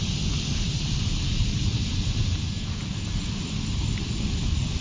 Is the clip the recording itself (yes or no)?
yes